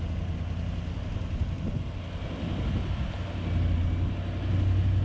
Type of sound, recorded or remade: recorded